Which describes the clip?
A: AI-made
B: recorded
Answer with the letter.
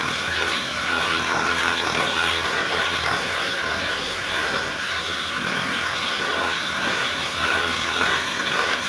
A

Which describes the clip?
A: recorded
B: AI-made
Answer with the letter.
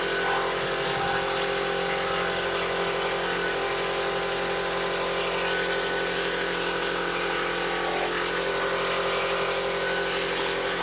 A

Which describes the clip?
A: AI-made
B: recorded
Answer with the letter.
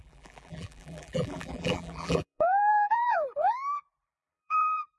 A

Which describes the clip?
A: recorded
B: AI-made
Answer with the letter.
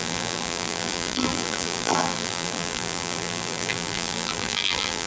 B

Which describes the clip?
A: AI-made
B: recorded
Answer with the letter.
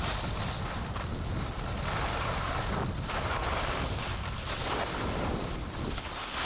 B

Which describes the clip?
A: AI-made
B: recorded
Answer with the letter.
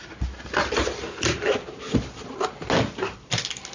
B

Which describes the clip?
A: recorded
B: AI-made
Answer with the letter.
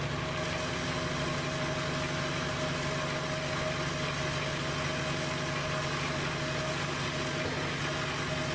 A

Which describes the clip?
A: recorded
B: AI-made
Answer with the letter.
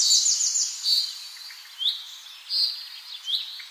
A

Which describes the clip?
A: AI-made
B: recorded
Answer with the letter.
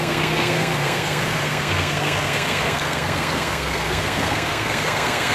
A